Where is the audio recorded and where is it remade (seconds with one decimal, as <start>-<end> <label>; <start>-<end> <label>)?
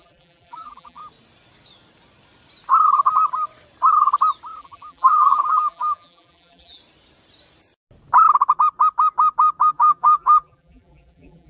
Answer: 0.0-1.0 remade; 1.0-4.6 recorded; 4.6-6.8 remade; 6.8-9.7 recorded; 9.7-11.5 remade